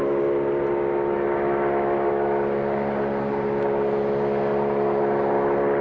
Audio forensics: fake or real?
real